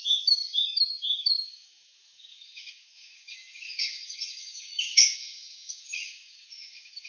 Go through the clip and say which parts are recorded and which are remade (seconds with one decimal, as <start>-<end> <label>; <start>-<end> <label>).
0.0-7.1 remade